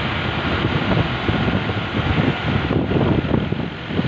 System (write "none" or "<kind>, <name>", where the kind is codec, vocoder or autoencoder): none